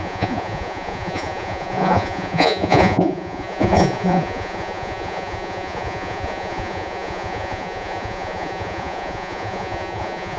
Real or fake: fake